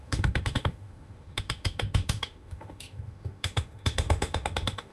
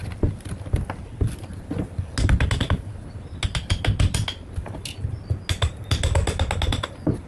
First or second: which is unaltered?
second